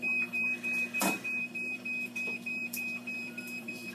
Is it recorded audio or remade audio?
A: remade